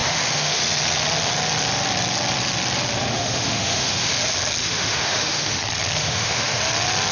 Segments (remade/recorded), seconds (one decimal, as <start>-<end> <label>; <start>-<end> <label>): 0.0-0.6 remade; 0.6-3.0 recorded; 3.0-4.1 remade; 4.1-4.6 recorded; 4.6-5.6 remade; 5.6-6.0 recorded; 6.0-6.6 remade; 6.6-7.1 recorded